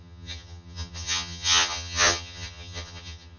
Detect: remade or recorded remade